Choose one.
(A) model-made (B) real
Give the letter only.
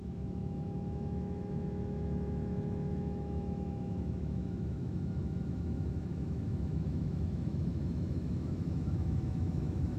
A